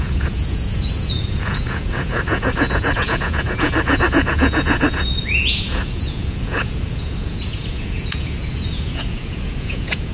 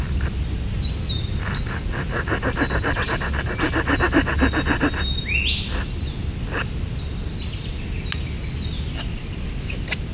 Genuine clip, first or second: second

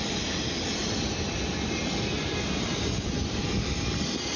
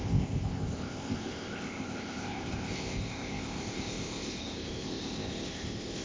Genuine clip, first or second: first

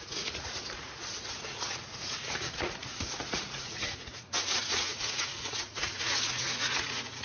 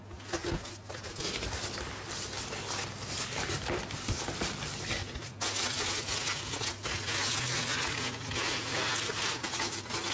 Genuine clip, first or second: second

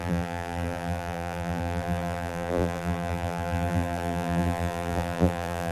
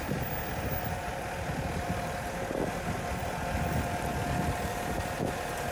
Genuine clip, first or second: second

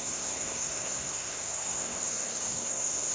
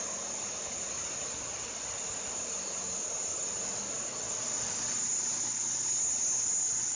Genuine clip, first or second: second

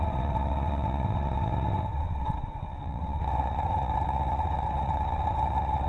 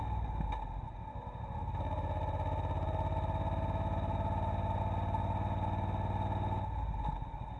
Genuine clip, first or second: second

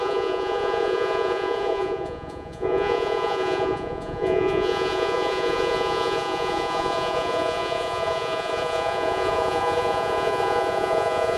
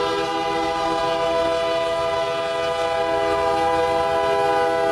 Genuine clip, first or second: second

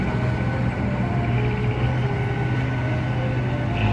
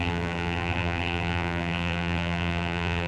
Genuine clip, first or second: first